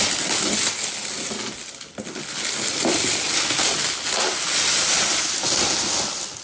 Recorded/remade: recorded